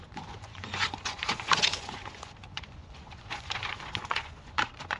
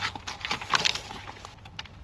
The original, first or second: second